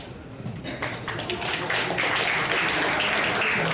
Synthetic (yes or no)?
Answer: no